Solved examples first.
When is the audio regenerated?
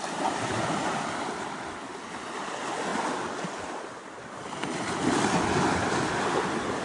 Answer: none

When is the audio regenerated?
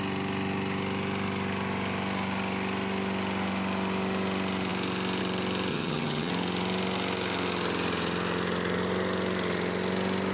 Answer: 5.7-6.3 (vocoder, HiFi-GAN)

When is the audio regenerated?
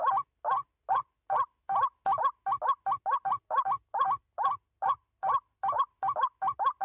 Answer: 3.3-6.8 (vocoder, BigVGAN v2)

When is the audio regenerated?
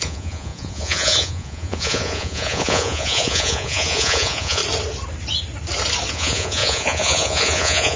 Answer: 0.0-4.6 (vocoder, Vocos); 6.1-8.0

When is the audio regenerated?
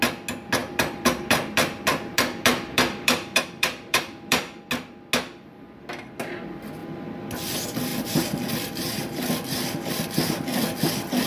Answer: 0.6-4.4 (vocoder, BigVGAN v2); 6.8-7.4; 7.9-9.9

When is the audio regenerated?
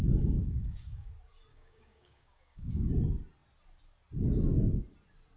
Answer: 0.0-1.1 (codec, DAC); 1.5-2.9